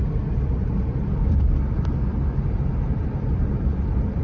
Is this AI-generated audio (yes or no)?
no